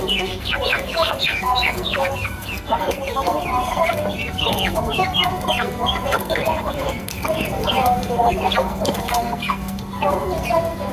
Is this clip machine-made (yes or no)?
yes